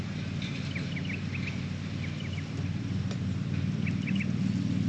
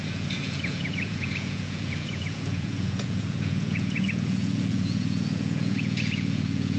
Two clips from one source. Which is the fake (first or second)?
second